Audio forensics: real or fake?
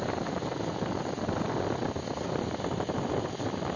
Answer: fake